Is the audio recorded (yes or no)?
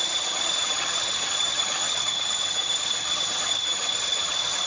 no